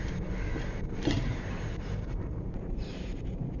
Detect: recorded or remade remade